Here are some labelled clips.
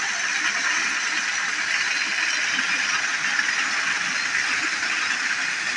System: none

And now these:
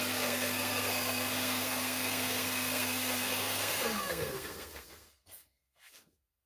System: codec, SNAC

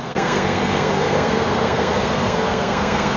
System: codec, SNAC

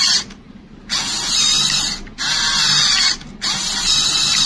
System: none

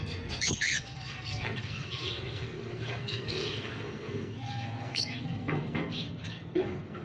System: codec, SNAC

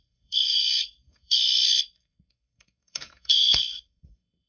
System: codec, SNAC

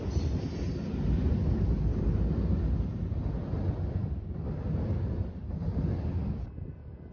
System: none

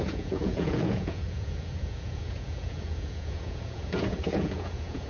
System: vocoder, Vocos